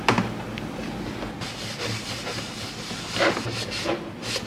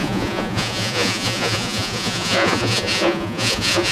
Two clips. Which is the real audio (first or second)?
first